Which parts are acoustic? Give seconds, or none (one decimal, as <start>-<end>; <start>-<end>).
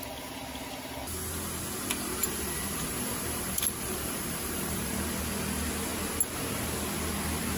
0.0-2.2; 4.9-7.6